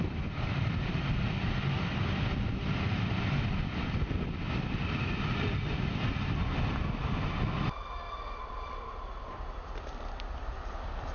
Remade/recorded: remade